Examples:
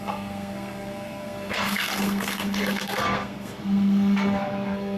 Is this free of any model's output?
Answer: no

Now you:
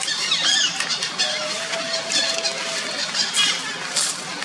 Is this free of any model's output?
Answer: yes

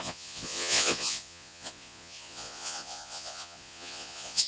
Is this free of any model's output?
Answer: no